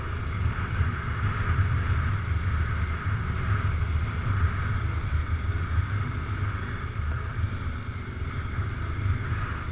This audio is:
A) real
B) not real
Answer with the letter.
A